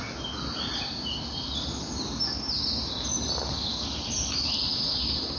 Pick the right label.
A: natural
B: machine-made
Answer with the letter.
A